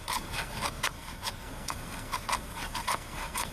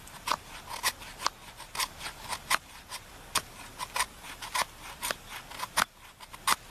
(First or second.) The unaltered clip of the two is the second